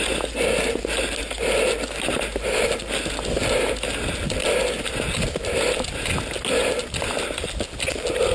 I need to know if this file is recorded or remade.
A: recorded